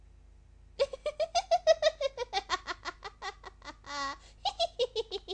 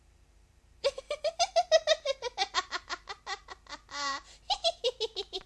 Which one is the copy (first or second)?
second